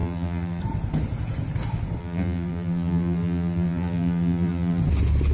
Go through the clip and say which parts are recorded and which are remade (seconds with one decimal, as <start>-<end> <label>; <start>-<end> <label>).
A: 0.0-0.6 remade; 0.6-2.0 recorded; 2.0-4.8 remade; 4.8-5.3 recorded